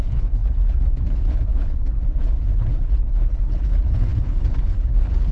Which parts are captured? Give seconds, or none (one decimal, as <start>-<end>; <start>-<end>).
none